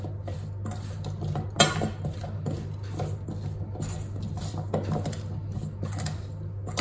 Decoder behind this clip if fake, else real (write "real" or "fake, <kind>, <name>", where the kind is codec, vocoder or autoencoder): real